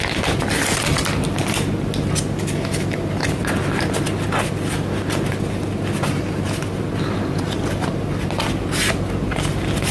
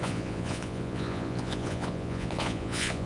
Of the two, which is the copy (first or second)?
second